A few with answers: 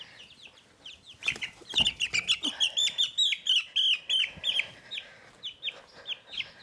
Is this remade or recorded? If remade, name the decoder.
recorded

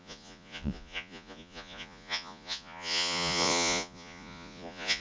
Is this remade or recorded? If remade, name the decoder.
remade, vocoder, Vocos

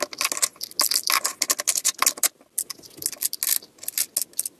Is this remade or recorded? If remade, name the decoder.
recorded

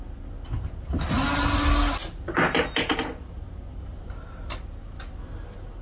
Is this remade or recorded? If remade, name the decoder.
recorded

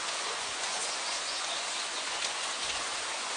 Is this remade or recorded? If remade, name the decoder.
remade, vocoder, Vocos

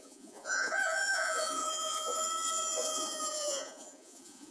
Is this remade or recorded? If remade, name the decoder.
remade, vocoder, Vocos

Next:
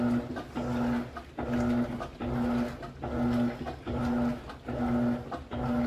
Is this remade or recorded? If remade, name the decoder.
recorded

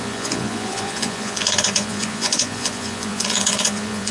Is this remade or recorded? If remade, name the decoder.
remade, vocoder, Vocos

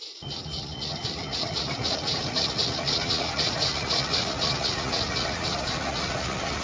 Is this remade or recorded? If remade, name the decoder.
remade, vocoder, Vocos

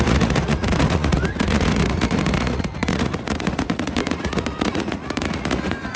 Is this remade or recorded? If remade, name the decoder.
remade, vocoder, Vocos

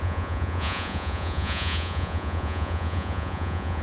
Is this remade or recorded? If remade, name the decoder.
remade, vocoder, Vocos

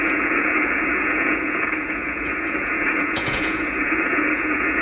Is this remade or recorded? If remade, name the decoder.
remade, vocoder, Vocos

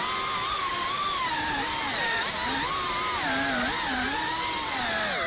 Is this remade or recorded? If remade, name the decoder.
recorded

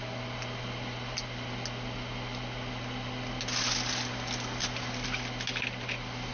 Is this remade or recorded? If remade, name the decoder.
recorded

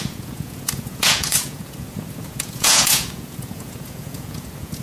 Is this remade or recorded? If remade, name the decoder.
remade, vocoder, Vocos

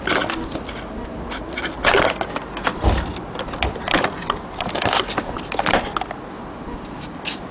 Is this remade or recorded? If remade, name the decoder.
recorded